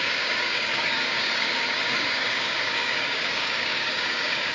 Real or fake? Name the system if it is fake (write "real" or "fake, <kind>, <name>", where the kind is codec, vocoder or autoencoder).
fake, codec, DAC